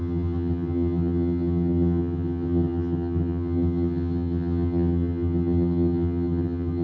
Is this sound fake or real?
fake